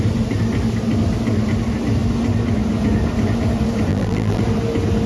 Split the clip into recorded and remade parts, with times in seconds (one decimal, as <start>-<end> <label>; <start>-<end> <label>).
0.0-3.9 recorded; 3.9-4.4 remade; 4.4-5.1 recorded